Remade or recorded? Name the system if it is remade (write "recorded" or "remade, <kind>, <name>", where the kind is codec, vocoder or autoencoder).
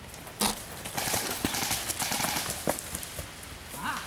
recorded